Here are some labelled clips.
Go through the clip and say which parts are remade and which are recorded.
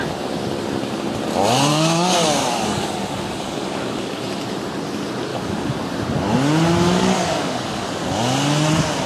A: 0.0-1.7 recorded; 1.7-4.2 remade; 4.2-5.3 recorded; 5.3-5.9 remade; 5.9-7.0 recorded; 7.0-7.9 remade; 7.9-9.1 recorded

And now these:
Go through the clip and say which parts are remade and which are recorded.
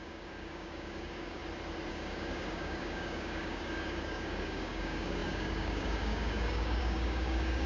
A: 0.0-1.4 remade; 1.4-1.9 recorded; 1.9-7.7 remade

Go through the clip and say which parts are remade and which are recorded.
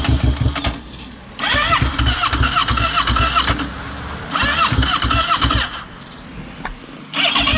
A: 0.0-7.6 recorded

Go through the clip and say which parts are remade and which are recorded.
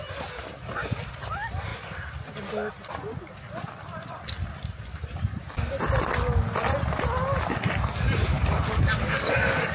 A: 0.0-8.3 recorded; 8.3-9.7 remade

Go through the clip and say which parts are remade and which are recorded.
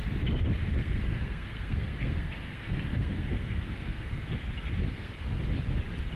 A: 0.0-0.8 recorded; 0.8-4.2 remade; 4.2-4.8 recorded; 4.8-5.4 remade; 5.4-6.2 recorded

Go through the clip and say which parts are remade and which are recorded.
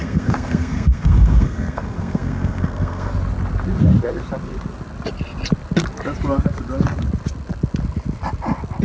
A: 0.0-3.1 remade; 3.1-8.8 recorded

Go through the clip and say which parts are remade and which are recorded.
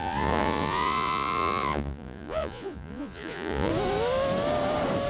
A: 0.0-3.7 remade; 3.7-5.1 recorded